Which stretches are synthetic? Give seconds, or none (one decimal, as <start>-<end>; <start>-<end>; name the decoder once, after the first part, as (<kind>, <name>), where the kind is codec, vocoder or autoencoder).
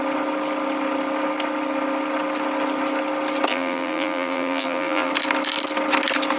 3.5-5.1 (vocoder, BigVGAN v2)